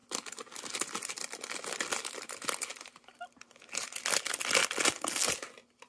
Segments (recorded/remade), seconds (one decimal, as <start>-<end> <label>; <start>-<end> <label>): 0.0-5.9 recorded